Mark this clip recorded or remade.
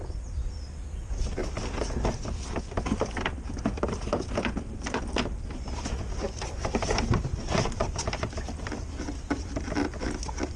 recorded